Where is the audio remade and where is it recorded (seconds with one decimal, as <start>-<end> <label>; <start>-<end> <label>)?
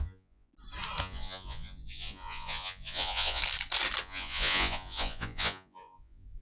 0.0-0.5 remade; 0.5-1.0 recorded; 1.0-3.4 remade; 3.4-4.0 recorded; 4.0-6.4 remade